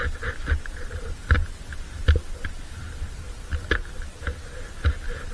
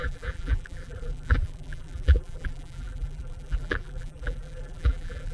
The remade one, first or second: second